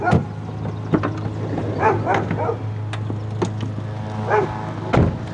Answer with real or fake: real